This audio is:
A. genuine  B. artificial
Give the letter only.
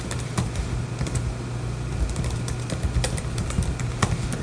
A